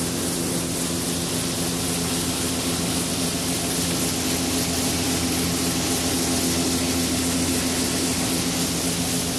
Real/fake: real